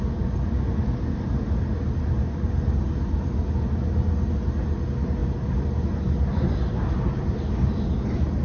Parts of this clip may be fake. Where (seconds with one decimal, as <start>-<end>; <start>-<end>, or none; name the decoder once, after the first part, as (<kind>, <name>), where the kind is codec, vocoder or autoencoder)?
none